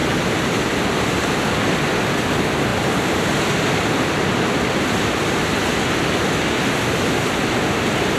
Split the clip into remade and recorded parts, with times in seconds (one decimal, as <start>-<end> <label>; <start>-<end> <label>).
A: 0.0-1.4 remade; 1.4-8.2 recorded

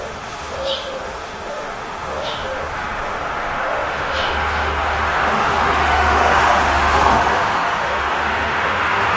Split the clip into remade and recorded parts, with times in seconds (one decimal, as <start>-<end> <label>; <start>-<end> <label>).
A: 0.0-9.2 remade

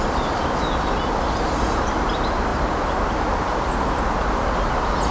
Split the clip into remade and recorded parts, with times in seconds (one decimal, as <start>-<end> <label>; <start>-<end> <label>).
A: 0.0-5.1 recorded

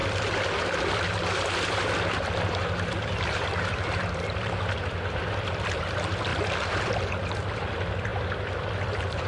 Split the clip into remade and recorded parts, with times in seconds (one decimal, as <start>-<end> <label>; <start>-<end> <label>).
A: 0.0-2.3 recorded; 2.3-9.3 remade

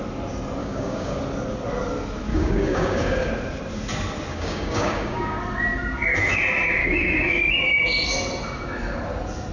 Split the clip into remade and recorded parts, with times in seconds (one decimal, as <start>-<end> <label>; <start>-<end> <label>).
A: 0.0-0.6 recorded; 0.6-1.2 remade; 1.2-2.3 recorded; 2.3-3.3 remade; 3.3-4.3 recorded; 4.3-5.4 remade; 5.4-6.8 recorded; 6.8-7.6 remade; 7.6-9.5 recorded

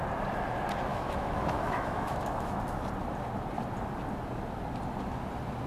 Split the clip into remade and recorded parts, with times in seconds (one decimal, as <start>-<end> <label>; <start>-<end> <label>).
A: 0.0-0.9 recorded; 0.9-2.6 remade; 2.6-5.7 recorded